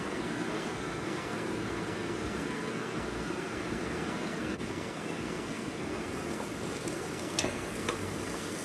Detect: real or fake fake